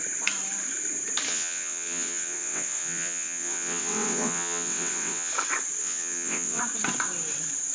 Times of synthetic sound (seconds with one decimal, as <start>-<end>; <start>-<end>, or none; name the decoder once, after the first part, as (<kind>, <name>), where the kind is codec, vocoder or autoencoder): 1.3-5.3 (vocoder, WaveNeXt); 5.8-6.6